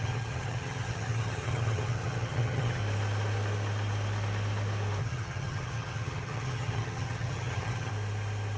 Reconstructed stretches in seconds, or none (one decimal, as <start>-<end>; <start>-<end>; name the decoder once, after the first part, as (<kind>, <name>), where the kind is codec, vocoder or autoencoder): 0.0-2.8 (vocoder, HiFi-GAN); 5.0-7.9